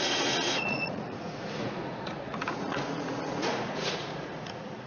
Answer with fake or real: fake